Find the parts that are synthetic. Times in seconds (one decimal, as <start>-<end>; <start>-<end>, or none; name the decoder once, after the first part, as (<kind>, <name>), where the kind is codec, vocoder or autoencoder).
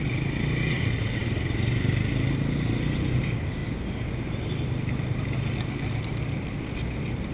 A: none